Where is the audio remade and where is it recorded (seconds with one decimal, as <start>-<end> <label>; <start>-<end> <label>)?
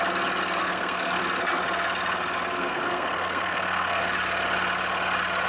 0.0-0.6 recorded; 0.6-1.2 remade; 1.2-2.6 recorded; 2.6-4.0 remade; 4.0-5.5 recorded